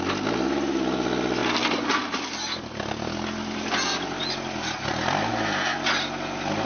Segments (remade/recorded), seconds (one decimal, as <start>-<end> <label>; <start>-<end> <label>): 0.0-6.7 recorded